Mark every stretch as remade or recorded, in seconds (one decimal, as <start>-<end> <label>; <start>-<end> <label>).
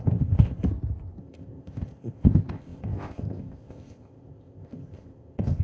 0.0-0.6 remade; 0.6-1.2 recorded; 1.2-5.6 remade